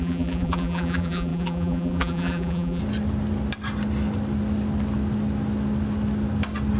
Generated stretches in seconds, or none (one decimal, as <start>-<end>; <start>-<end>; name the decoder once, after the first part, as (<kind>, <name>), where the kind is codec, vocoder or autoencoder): 0.0-2.8 (vocoder, BigVGAN v2)